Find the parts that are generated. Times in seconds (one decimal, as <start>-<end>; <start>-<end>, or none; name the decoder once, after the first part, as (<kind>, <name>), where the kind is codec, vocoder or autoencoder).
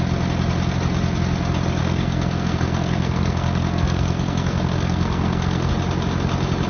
1.8-5.7 (codec, SNAC)